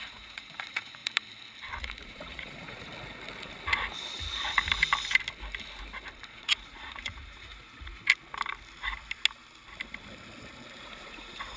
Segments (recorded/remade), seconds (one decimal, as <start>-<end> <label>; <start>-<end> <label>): 0.0-1.0 remade; 1.0-1.8 recorded; 1.8-2.9 remade; 2.9-6.2 recorded; 6.2-8.0 remade; 8.0-10.8 recorded; 10.8-11.6 remade